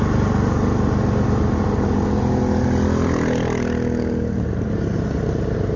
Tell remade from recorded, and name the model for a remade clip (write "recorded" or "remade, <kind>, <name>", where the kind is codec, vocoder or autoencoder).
recorded